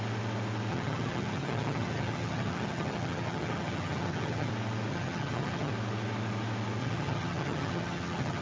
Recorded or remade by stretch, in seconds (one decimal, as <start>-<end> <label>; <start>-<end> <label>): 0.0-0.7 recorded; 0.7-4.5 remade; 4.5-4.9 recorded; 4.9-5.7 remade; 5.7-6.8 recorded; 6.8-8.4 remade